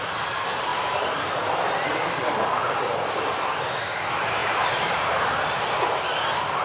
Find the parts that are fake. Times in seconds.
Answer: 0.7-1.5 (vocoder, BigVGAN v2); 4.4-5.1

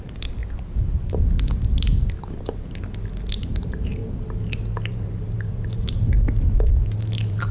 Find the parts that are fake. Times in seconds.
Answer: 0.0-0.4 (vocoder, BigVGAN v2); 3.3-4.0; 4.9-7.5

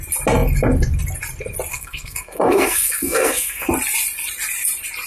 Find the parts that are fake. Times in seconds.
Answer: 1.7-3.7 (codec, SNAC)